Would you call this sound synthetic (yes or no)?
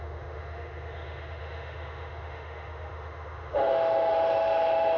yes